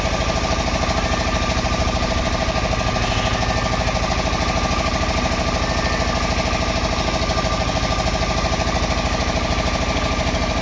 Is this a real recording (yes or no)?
yes